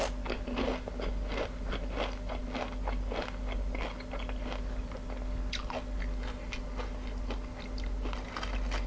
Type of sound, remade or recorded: recorded